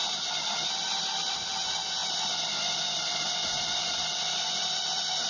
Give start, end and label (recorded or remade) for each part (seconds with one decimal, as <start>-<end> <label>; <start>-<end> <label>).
0.0-2.0 recorded; 2.0-5.3 remade